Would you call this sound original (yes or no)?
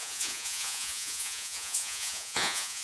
no